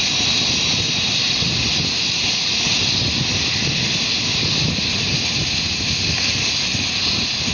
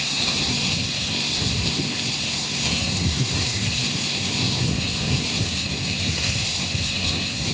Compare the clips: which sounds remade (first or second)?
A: second